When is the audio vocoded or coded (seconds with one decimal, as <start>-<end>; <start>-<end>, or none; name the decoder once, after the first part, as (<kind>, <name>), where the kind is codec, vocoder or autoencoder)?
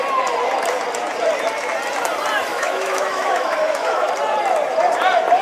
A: 2.5-4.1 (autoencoder, DAC-VAE)